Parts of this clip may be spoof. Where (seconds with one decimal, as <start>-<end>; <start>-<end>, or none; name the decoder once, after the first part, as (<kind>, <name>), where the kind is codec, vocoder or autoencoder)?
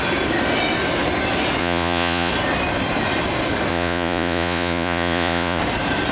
1.6-2.3 (vocoder, Vocos); 3.7-5.6